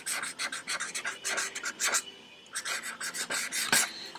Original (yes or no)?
yes